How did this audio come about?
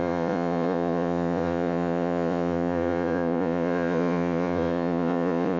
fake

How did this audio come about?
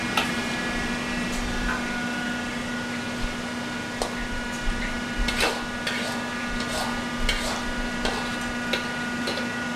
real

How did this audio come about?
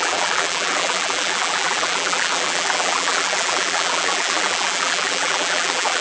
fake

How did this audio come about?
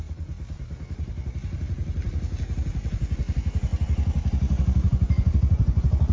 real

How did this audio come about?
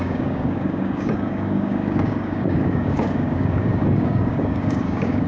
fake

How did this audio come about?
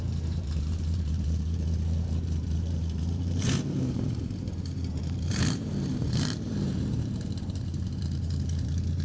fake